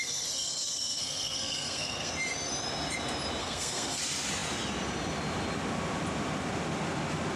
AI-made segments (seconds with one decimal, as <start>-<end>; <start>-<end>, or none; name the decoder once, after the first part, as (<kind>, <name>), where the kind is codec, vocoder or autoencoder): 0.0-2.1 (codec, SNAC); 3.4-4.0